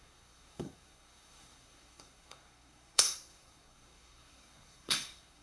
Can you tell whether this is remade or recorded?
remade